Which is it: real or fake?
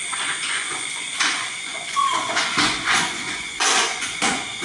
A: fake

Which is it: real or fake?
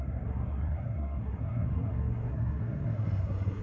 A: fake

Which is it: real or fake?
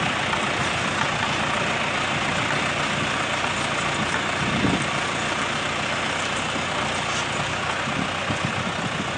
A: real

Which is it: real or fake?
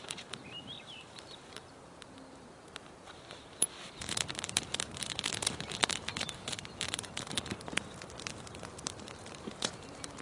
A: fake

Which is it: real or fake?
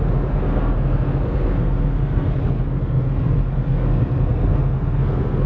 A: fake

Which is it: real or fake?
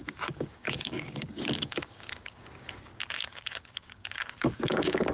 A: fake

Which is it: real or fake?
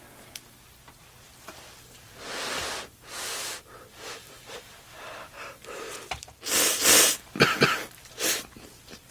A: real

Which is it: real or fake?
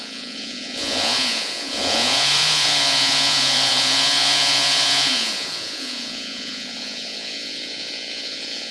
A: fake